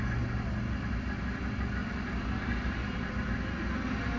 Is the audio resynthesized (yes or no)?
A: no